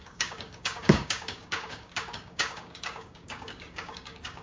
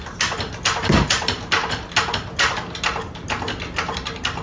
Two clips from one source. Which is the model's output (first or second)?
first